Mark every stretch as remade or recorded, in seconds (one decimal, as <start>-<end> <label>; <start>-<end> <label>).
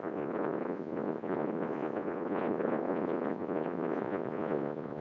0.0-5.0 remade